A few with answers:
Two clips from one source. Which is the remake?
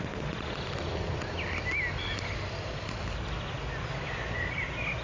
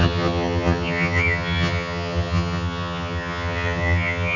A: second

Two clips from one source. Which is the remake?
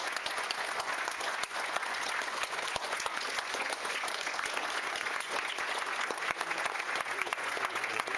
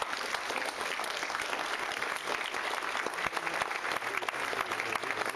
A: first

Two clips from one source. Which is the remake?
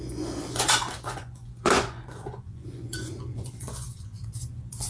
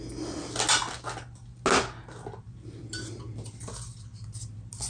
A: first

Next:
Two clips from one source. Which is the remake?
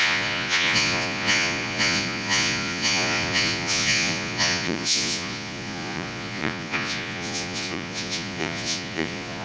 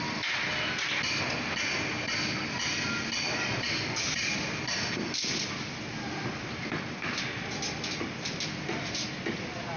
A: first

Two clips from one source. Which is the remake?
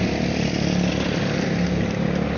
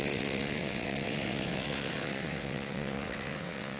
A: second